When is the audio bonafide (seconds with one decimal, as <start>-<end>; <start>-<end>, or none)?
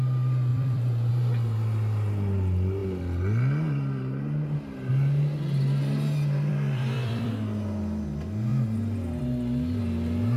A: 0.0-0.5; 1.1-6.5; 7.3-10.4